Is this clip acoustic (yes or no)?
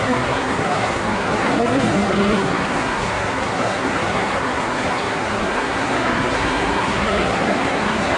no